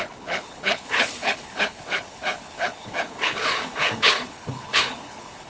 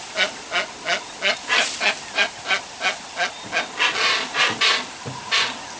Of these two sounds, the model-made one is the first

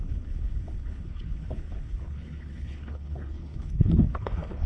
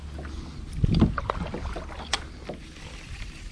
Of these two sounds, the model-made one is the first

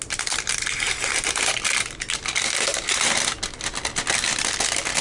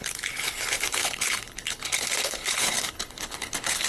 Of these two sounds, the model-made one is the second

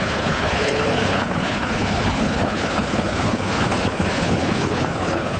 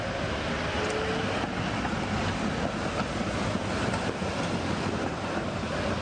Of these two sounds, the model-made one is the first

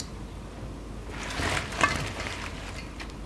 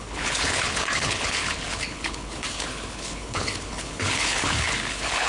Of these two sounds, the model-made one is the second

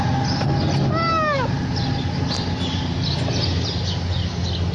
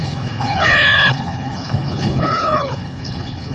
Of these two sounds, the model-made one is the second